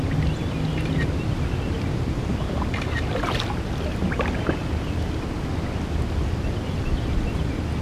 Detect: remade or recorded recorded